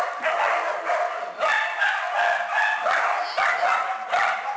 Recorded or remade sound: recorded